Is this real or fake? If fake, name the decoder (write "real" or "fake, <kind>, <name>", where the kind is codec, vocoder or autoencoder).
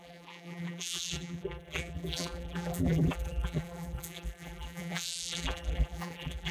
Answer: fake, vocoder, BigVGAN v2